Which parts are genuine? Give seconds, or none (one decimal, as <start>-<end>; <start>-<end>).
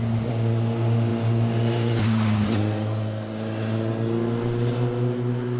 0.0-5.6